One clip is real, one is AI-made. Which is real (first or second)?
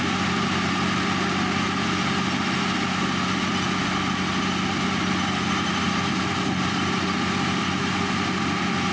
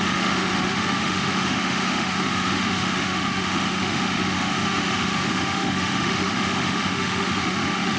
first